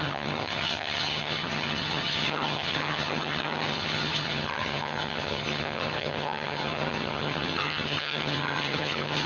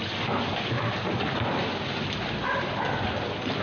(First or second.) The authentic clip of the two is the second